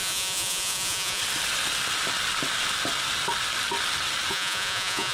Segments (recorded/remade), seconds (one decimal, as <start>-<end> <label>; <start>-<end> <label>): 0.0-1.2 remade; 1.2-4.3 recorded; 4.3-5.1 remade